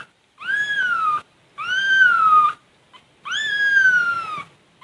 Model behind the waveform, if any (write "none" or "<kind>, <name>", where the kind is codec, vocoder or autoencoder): none